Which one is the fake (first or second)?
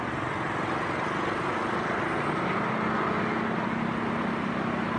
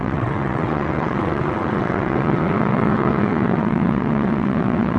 second